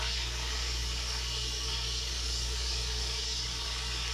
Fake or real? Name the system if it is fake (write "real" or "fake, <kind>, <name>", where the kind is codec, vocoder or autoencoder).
fake, codec, DAC